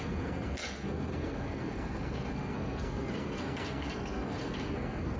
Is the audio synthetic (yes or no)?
yes